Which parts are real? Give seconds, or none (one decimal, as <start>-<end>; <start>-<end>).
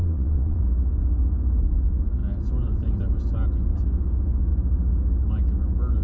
0.6-6.0